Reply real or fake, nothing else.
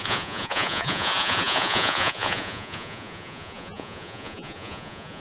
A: fake